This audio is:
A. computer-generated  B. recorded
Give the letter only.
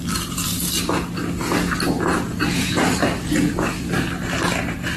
B